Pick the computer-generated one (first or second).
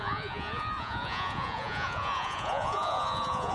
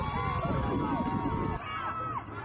first